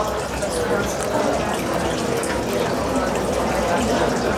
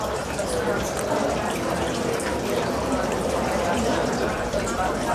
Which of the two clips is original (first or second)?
first